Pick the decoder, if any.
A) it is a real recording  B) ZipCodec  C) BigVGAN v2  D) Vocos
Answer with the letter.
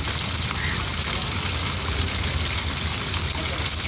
A